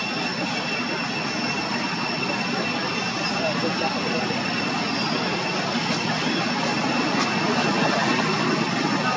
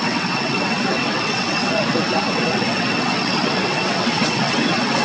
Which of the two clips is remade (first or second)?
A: second